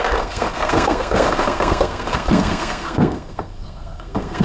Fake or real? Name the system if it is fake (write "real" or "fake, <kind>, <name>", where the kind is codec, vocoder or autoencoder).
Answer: fake, codec, SNAC